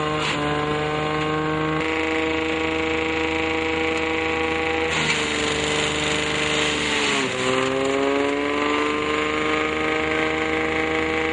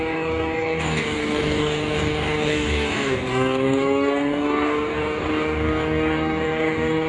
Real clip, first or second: first